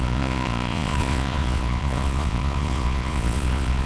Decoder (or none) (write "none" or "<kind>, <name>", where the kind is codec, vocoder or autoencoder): vocoder, Vocos